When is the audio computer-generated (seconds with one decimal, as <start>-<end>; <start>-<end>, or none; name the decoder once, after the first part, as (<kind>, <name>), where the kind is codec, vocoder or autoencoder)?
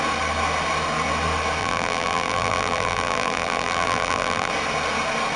1.6-4.5 (vocoder, BigVGAN v2)